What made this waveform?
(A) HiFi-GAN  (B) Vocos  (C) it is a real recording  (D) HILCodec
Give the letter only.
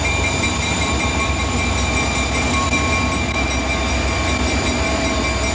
C